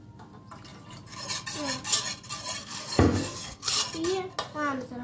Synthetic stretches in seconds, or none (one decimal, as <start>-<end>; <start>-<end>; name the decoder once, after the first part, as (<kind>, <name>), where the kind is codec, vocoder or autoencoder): 2.6-3.8 (codec, SNAC)